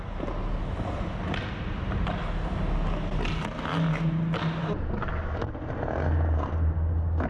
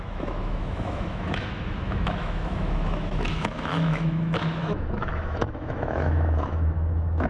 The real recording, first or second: first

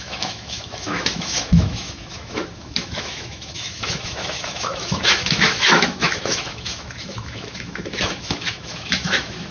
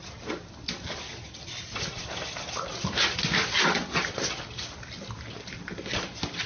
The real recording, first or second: second